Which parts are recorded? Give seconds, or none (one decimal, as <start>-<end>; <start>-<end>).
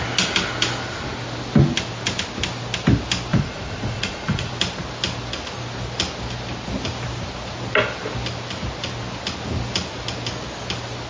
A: 0.0-3.3; 4.5-11.1